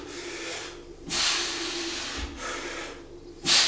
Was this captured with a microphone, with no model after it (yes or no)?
yes